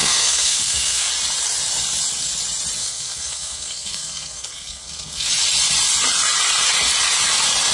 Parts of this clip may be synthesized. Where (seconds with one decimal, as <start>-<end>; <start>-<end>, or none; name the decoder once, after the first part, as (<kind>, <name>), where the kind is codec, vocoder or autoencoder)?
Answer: 0.0-1.1 (codec, SNAC); 2.8-5.3